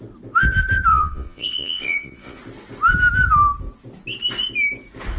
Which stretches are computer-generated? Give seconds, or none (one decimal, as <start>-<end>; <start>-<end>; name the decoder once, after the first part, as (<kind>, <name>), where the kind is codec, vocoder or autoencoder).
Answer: 0.9-2.4 (vocoder, Vocos)